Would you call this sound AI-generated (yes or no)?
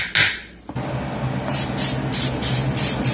no